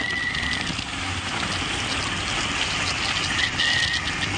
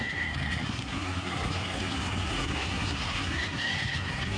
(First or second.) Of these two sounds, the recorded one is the first